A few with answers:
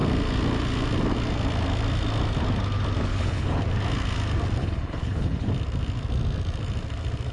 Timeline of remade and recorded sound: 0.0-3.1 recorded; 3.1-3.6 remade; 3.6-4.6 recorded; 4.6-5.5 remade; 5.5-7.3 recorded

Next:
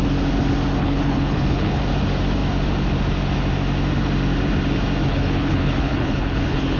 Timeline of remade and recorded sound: 0.0-0.8 recorded; 0.8-1.8 remade; 1.8-5.1 recorded; 5.1-6.8 remade

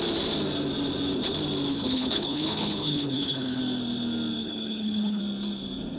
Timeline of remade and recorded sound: 0.0-1.7 recorded; 1.7-3.6 remade; 3.6-4.4 recorded; 4.4-5.2 remade; 5.2-6.0 recorded

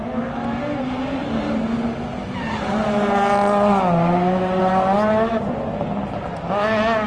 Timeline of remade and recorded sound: 0.0-7.1 recorded

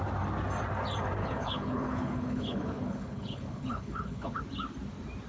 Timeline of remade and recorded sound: 0.0-1.2 recorded; 1.2-4.4 remade; 4.4-5.3 recorded

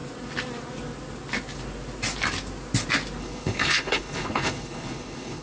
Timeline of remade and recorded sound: 0.0-3.2 recorded; 3.2-5.4 remade